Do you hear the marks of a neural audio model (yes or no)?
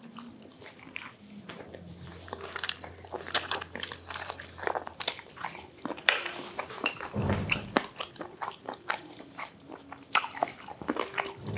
yes